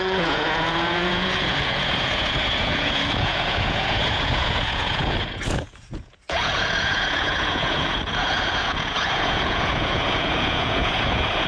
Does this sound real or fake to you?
fake